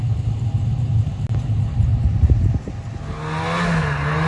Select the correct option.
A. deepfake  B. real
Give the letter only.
B